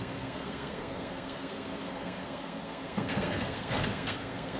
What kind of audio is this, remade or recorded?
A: remade